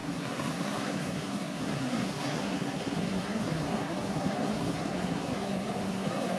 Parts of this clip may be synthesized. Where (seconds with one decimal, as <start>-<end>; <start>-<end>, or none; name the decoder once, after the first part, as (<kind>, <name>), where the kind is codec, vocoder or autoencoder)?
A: 0.0-6.4 (codec, SNAC)